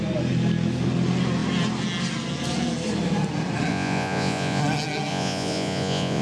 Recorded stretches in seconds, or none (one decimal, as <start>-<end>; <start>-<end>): 0.0-3.7; 4.6-5.1